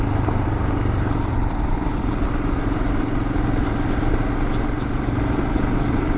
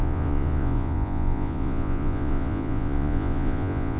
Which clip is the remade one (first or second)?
second